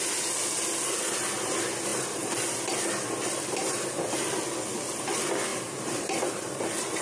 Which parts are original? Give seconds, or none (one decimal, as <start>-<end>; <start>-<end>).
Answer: 0.0-1.9; 2.5-5.5; 6.6-7.0